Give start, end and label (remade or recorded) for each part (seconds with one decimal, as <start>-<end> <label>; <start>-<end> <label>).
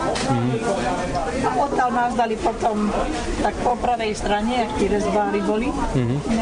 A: 0.0-3.7 recorded; 3.7-4.2 remade; 4.2-6.4 recorded